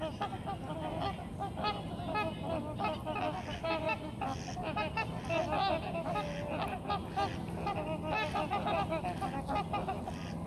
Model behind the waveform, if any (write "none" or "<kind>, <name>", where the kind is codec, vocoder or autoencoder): none